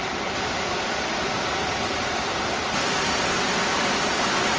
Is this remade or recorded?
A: remade